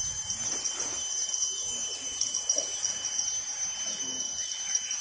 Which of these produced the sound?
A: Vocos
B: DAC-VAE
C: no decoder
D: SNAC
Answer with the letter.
C